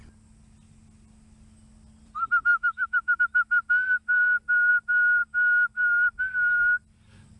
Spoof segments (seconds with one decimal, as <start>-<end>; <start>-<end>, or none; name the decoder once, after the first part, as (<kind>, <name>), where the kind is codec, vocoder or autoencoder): 2.5-3.2 (autoencoder, DAC-VAE)

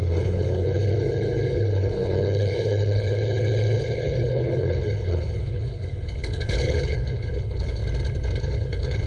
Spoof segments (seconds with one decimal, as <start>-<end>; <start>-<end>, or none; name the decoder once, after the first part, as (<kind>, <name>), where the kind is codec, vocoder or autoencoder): 0.0-7.8 (codec, HILCodec); 8.4-9.1

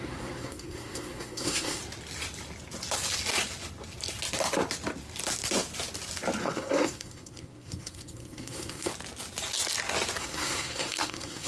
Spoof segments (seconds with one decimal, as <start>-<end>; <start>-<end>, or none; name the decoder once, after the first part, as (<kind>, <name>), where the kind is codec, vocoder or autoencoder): 0.0-1.8 (codec, SNAC); 6.4-8.9; 10.2-11.5